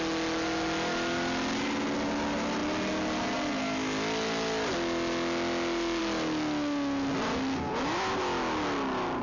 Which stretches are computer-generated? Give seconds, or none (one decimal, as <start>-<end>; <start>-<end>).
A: none